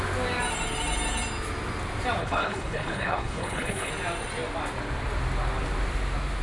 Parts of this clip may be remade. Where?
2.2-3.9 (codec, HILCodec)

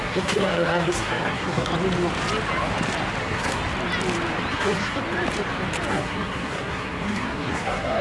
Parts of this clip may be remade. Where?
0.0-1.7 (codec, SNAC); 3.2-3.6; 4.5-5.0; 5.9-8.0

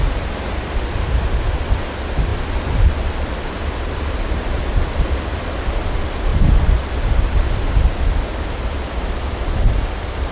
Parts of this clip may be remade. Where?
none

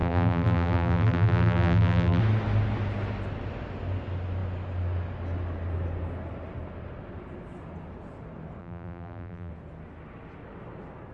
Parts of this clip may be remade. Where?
0.0-2.2 (vocoder, BigVGAN v2); 8.6-9.5

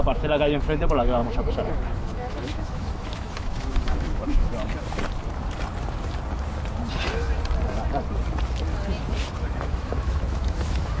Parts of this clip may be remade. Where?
0.0-4.5 (autoencoder, DAC-VAE); 9.6-11.0

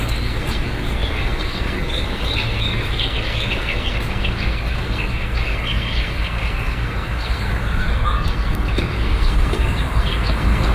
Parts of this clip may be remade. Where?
0.0-10.7 (codec, SNAC)

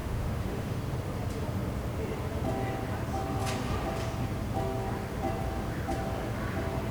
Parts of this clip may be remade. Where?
0.0-0.8 (autoencoder, DAC-VAE)

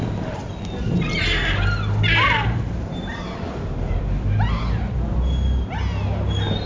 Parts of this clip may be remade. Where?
none